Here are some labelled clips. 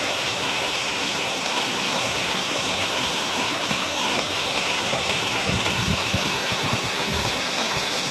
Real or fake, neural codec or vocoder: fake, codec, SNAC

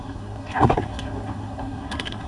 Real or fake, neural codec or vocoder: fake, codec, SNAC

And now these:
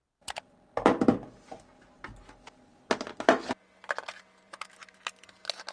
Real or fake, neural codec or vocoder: real